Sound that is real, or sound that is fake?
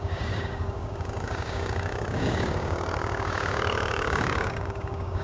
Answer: fake